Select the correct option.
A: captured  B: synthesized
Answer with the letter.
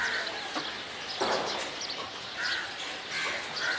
A